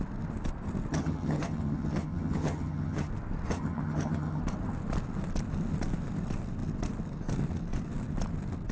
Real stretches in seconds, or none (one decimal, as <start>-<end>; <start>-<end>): 0.0-0.9; 3.1-3.5; 4.4-8.7